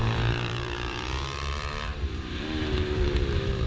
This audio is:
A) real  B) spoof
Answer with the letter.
B